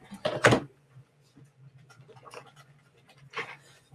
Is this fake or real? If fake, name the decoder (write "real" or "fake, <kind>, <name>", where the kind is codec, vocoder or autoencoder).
fake, vocoder, Vocos